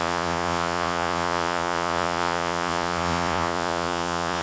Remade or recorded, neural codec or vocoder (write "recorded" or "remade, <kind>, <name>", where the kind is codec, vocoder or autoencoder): remade, vocoder, Vocos